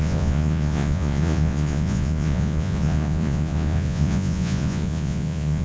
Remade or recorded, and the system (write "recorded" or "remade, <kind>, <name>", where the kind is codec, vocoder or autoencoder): remade, vocoder, Vocos